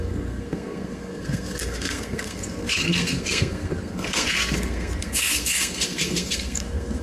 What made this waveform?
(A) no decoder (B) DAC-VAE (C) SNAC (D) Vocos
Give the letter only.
C